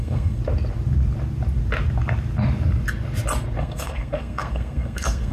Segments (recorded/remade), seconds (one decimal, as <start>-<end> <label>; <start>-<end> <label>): 0.0-0.4 remade; 0.4-3.6 recorded; 3.6-5.3 remade